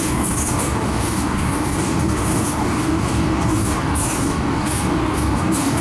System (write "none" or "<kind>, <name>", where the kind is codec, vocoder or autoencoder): codec, DAC